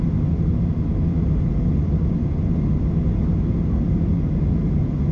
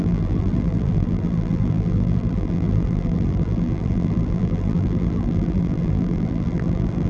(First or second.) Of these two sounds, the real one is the first